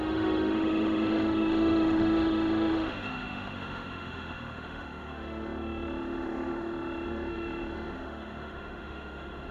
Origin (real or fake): fake